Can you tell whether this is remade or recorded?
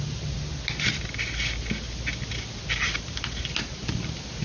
recorded